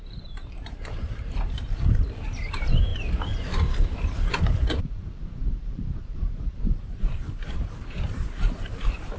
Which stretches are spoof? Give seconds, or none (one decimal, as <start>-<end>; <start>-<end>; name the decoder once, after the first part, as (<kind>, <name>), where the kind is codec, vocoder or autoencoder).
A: 0.0-2.9 (vocoder, BigVGAN v2); 4.3-9.2